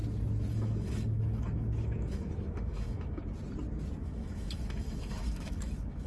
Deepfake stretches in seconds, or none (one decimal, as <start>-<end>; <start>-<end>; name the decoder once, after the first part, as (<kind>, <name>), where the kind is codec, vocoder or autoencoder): 0.5-3.2 (autoencoder, DAC-VAE); 4.0-6.1